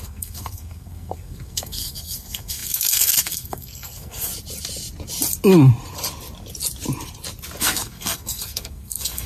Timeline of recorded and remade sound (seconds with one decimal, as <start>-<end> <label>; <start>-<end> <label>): 0.0-4.3 remade; 4.3-7.6 recorded; 7.6-9.3 remade